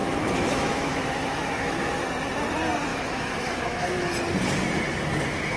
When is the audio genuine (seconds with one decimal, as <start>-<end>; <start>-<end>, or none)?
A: 1.9-2.9; 4.1-5.6

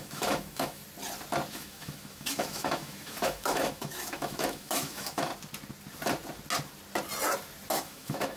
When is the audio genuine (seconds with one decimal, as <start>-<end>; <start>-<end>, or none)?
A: 0.8-1.5; 5.3-7.7